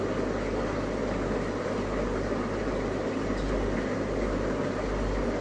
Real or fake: real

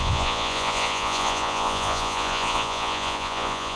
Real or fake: fake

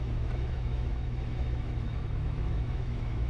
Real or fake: fake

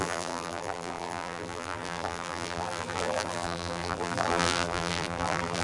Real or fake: fake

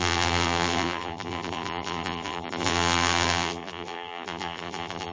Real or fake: fake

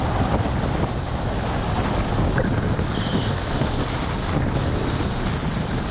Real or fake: real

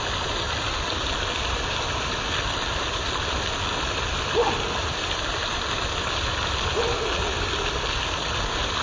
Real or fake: real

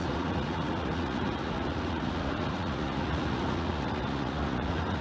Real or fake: fake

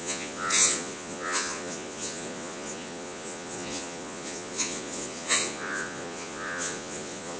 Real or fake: fake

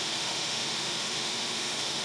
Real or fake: fake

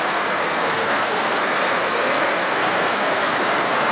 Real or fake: fake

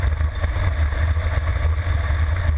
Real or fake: real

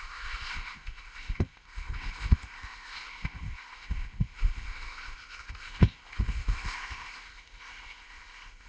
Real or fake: fake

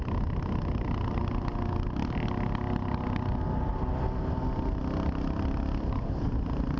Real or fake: real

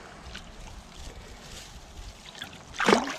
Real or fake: real